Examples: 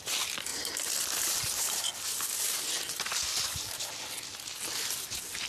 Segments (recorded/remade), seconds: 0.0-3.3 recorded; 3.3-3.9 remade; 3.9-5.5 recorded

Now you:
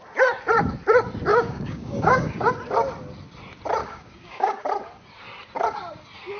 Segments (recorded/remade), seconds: 0.0-1.3 recorded; 1.3-2.5 remade; 2.5-3.8 recorded; 3.8-4.6 remade; 4.6-6.4 recorded

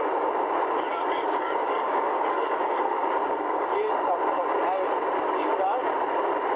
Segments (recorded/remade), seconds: 0.0-1.2 recorded; 1.2-3.7 remade; 3.7-6.6 recorded